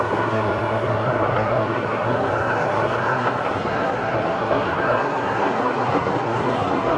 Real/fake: fake